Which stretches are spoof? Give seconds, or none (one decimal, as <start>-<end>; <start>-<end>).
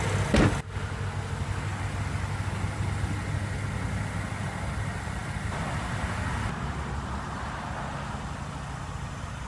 5.2-8.8